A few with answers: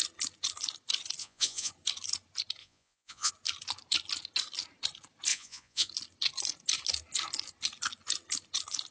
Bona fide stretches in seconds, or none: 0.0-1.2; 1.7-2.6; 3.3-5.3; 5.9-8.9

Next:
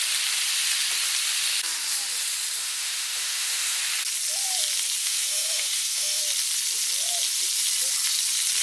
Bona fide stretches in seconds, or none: 0.0-2.6; 3.8-5.0; 6.2-8.6

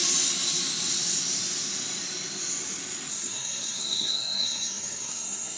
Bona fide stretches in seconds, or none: 0.0-3.1